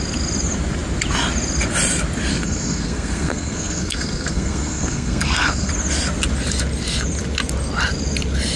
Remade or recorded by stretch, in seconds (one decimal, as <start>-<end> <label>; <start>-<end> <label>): 0.0-2.3 recorded; 2.3-5.7 remade; 5.7-8.6 recorded